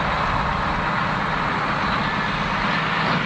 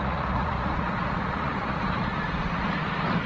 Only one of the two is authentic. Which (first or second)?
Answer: first